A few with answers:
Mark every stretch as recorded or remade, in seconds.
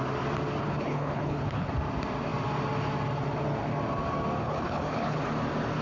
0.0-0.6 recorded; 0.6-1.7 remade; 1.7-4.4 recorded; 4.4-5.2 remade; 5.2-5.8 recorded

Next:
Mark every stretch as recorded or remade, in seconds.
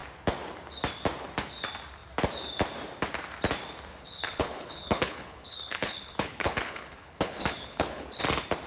0.0-3.9 recorded; 3.9-8.2 remade; 8.2-8.7 recorded